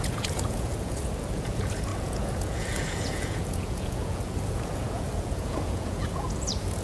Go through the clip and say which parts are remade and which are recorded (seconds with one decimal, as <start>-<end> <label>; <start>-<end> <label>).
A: 0.0-6.8 remade